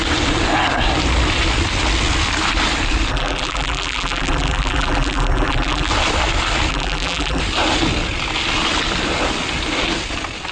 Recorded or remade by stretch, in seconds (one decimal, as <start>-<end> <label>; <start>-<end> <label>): 0.0-3.1 recorded; 3.1-5.9 remade; 5.9-6.7 recorded; 6.7-7.4 remade; 7.4-10.5 recorded